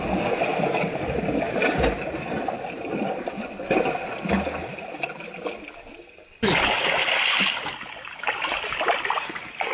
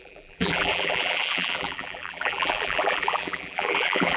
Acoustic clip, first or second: first